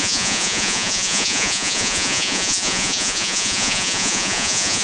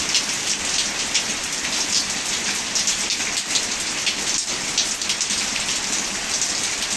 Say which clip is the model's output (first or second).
first